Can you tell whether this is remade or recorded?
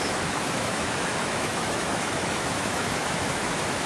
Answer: remade